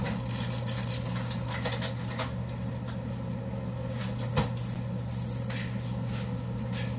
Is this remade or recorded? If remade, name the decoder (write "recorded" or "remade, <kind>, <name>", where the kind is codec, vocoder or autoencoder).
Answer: recorded